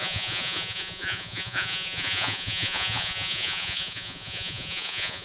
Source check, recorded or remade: remade